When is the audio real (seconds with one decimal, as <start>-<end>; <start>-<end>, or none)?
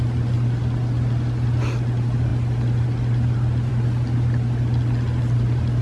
0.0-5.8